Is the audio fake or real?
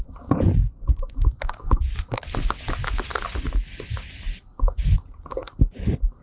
real